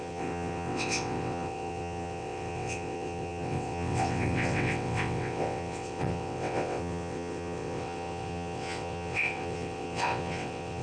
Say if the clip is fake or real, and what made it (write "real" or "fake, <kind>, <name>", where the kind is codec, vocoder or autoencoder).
fake, vocoder, WaveNeXt